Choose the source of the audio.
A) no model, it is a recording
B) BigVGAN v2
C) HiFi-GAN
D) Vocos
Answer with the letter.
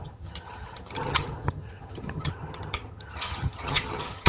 C